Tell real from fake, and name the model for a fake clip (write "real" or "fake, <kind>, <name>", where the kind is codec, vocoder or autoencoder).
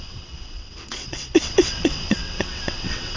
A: fake, vocoder, WaveNeXt